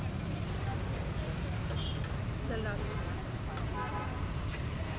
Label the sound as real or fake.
real